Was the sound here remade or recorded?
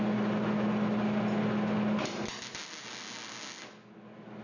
recorded